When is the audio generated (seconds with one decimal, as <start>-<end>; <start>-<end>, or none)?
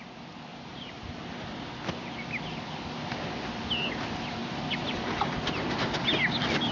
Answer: 0.5-1.2; 4.4-5.9